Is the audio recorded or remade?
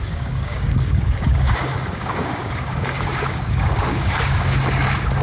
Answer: remade